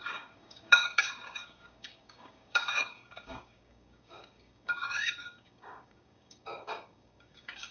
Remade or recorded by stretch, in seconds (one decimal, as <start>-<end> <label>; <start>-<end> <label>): 0.0-7.7 remade